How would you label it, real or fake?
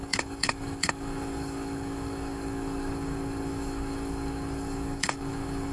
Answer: fake